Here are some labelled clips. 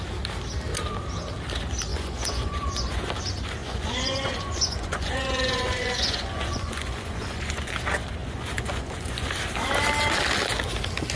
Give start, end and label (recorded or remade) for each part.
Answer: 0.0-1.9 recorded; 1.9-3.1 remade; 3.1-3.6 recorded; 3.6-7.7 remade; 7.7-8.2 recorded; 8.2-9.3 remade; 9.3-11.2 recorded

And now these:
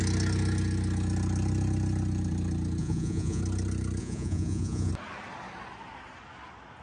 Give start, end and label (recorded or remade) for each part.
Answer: 0.0-2.8 recorded; 2.8-3.4 remade; 3.4-4.0 recorded; 4.0-4.9 remade; 4.9-6.8 recorded

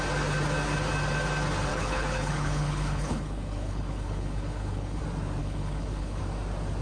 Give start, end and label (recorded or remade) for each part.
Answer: 0.0-1.7 recorded; 1.7-5.0 remade; 5.0-5.4 recorded; 5.4-6.2 remade; 6.2-6.8 recorded

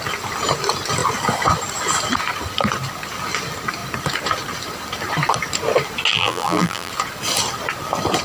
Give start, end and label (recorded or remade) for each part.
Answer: 0.0-6.1 recorded; 6.1-6.9 remade; 6.9-8.2 recorded

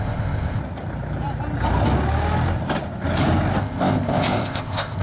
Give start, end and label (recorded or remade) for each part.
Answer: 0.0-0.6 remade; 0.6-3.6 recorded; 3.6-5.0 remade